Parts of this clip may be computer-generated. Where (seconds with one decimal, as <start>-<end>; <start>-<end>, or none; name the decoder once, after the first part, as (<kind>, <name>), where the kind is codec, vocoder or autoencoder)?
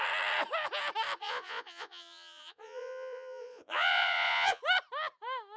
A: 1.2-4.6 (vocoder, Vocos)